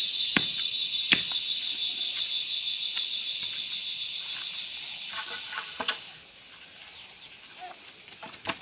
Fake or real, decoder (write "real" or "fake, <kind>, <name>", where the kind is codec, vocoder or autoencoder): real